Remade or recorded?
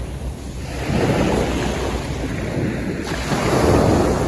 recorded